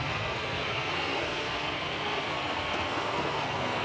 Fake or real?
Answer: fake